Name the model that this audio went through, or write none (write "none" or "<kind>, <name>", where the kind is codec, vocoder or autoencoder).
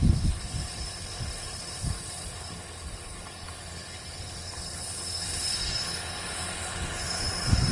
codec, HILCodec